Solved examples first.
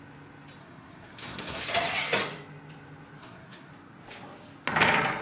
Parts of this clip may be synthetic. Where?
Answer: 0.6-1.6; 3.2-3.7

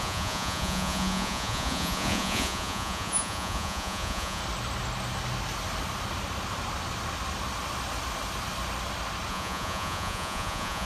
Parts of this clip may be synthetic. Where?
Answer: 0.0-4.4; 9.3-10.9